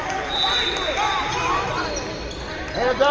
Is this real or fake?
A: real